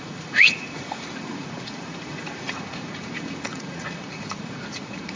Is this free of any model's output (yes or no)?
no